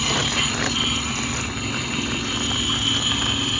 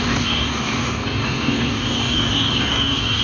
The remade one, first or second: second